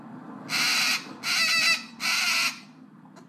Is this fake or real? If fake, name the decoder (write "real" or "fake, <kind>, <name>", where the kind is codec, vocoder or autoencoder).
real